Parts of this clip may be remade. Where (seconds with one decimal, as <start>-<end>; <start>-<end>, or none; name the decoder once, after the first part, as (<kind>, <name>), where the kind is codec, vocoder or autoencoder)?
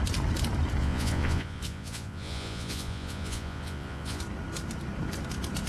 0.8-4.2 (vocoder, Vocos)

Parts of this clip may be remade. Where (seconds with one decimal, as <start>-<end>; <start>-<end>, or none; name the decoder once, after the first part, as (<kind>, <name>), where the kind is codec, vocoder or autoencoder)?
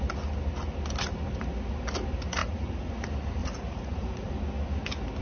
2.4-2.9 (vocoder, Vocos); 3.4-4.3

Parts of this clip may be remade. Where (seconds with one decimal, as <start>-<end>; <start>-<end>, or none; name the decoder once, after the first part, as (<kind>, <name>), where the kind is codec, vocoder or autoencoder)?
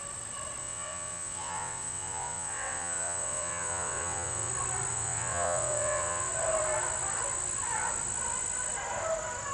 0.6-4.5 (vocoder, WaveNeXt); 4.9-6.3